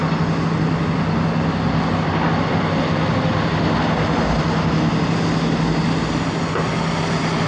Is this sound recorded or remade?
recorded